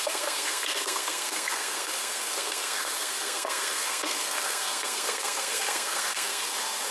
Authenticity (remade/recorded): remade